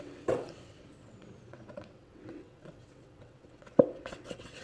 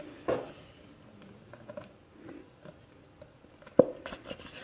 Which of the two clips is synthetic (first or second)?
first